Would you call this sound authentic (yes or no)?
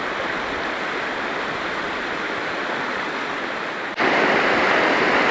yes